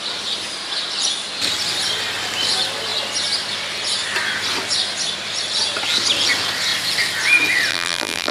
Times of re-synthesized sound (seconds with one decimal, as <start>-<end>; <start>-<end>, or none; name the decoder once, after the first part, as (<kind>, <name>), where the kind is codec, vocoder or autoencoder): 7.7-8.3 (vocoder, BigVGAN v2)